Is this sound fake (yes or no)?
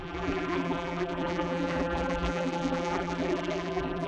yes